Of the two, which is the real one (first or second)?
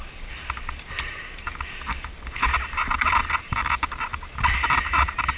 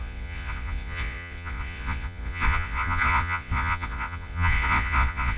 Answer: first